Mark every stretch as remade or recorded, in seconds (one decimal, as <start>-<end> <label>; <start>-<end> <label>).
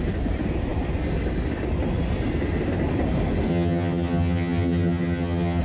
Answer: 0.0-3.5 recorded; 3.5-5.6 remade